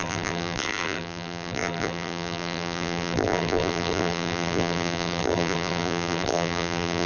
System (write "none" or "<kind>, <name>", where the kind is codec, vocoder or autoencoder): vocoder, BigVGAN v2